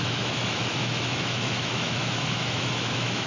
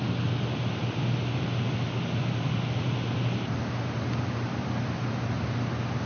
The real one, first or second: second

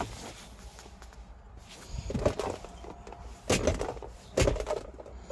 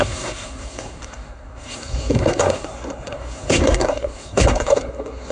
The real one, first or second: first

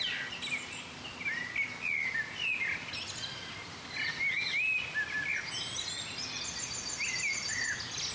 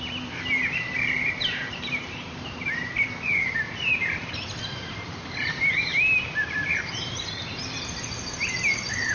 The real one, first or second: first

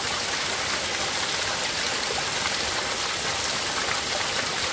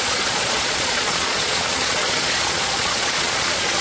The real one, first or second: first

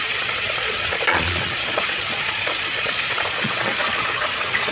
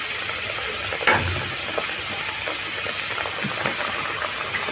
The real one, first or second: second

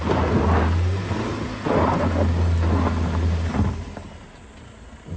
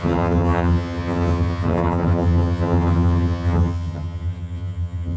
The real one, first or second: first